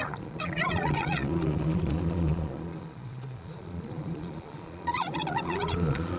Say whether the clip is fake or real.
fake